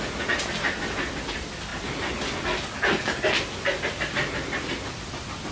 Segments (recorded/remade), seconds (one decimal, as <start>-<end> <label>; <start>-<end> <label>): 0.0-5.5 recorded